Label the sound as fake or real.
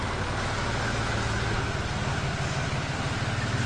real